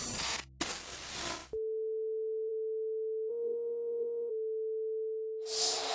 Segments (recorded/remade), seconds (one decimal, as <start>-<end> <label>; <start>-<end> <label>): 0.0-3.3 recorded; 3.3-4.3 remade; 4.3-5.9 recorded